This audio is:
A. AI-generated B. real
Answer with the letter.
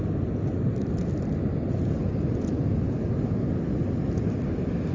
B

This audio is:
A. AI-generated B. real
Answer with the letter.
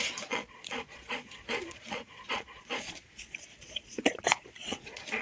A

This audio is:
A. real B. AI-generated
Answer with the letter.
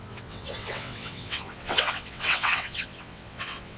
B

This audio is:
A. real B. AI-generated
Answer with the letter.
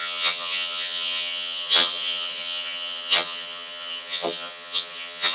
B